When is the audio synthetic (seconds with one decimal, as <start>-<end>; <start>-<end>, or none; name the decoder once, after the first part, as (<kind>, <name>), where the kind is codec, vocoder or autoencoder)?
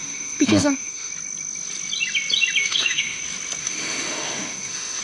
0.0-1.1 (autoencoder, DAC-VAE); 2.6-3.2; 3.6-5.0